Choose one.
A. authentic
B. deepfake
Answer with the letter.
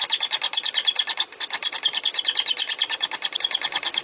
A